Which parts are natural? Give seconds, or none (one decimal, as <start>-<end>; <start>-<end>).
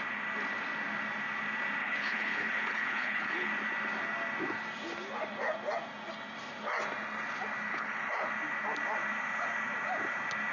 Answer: 0.0-1.8; 3.5-7.7; 8.3-10.5